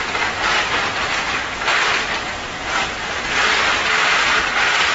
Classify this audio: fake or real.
real